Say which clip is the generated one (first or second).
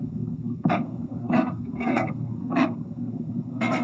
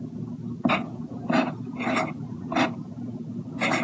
first